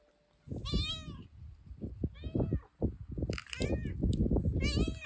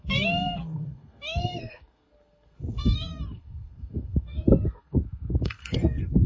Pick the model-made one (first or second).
second